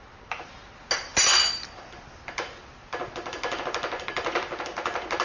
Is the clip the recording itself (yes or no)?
yes